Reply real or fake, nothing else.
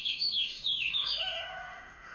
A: fake